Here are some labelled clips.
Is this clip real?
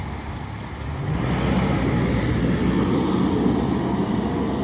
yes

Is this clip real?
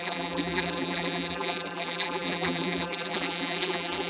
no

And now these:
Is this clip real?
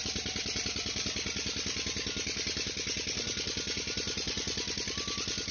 yes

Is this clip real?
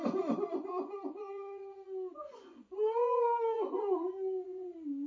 no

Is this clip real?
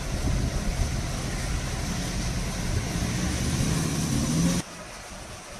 yes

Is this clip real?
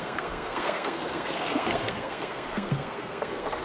no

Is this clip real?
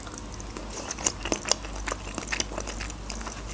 yes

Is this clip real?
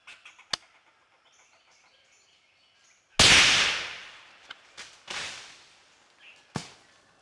yes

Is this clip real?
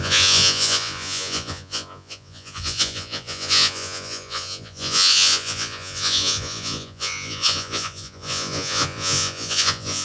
no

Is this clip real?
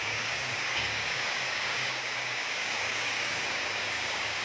no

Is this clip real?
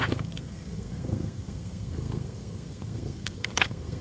no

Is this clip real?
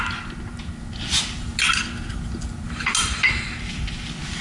yes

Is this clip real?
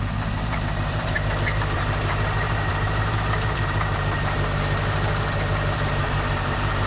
no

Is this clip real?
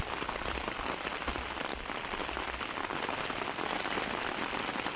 yes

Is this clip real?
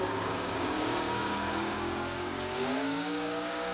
no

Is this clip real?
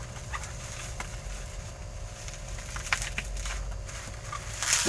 yes